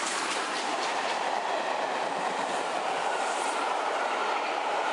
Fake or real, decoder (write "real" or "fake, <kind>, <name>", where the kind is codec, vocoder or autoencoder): fake, vocoder, BigVGAN v2